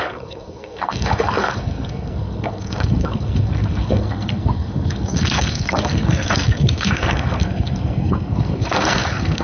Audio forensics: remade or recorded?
remade